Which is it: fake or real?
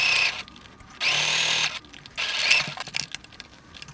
real